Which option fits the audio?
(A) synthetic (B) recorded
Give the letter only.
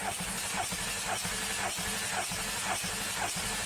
B